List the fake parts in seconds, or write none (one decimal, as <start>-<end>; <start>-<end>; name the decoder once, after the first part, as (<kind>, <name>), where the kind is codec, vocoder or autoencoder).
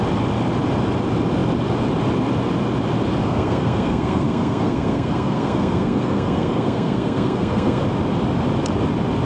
3.2-7.8 (codec, SNAC)